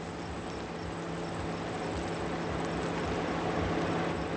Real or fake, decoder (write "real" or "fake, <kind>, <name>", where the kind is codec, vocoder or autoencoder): real